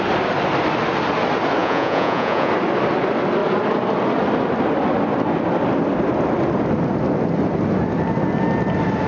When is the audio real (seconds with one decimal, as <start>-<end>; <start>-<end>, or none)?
0.0-1.6; 2.5-9.1